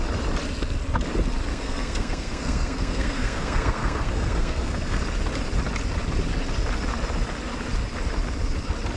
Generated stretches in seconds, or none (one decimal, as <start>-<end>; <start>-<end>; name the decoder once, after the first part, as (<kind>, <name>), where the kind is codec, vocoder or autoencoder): 1.5-5.0 (codec, SNAC)